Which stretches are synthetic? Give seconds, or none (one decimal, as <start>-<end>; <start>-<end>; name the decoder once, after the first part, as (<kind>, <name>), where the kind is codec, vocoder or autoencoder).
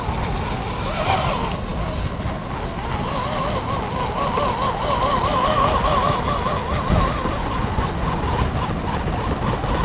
7.3-8.2 (vocoder, Vocos)